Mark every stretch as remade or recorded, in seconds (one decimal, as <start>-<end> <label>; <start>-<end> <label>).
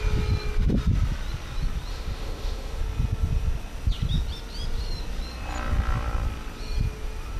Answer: 0.0-1.9 recorded; 1.9-2.8 remade; 2.8-7.4 recorded